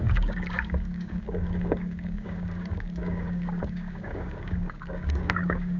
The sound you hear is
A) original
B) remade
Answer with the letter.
B